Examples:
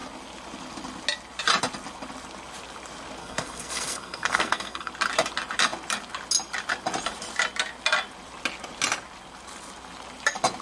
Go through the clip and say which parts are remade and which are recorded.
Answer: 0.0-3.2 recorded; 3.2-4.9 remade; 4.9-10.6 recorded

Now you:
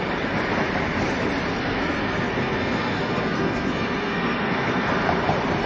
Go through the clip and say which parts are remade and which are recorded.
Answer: 0.0-1.5 recorded; 1.5-4.9 remade; 4.9-5.7 recorded

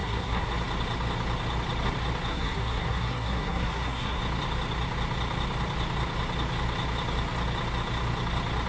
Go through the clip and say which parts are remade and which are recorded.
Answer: 0.0-0.5 remade; 0.5-2.3 recorded; 2.3-4.2 remade; 4.2-8.7 recorded